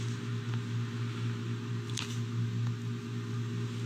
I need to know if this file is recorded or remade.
recorded